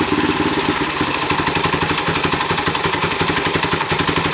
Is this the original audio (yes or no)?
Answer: no